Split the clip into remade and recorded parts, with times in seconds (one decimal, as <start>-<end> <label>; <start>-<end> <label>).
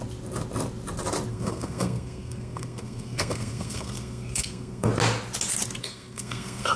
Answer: 0.0-1.3 recorded; 1.3-4.9 remade; 4.9-5.8 recorded; 5.8-6.8 remade